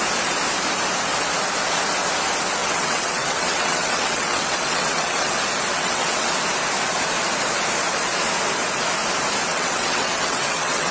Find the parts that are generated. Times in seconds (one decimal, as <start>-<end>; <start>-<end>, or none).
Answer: 2.6-5.3; 5.7-6.3; 9.5-10.9